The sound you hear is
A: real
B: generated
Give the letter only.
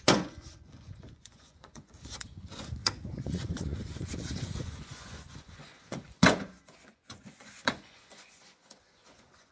B